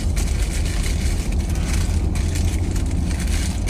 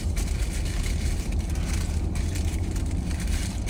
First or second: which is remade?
second